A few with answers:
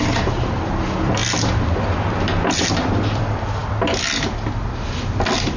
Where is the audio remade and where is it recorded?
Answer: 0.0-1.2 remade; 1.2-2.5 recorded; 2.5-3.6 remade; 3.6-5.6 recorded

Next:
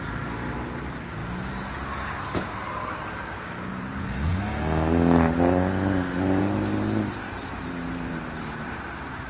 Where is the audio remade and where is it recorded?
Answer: 0.0-1.2 remade; 1.2-3.7 recorded; 3.7-4.3 remade; 4.3-6.4 recorded; 6.4-9.3 remade

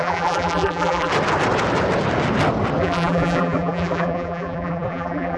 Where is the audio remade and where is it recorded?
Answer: 0.0-1.1 remade; 1.1-2.8 recorded; 2.8-5.4 remade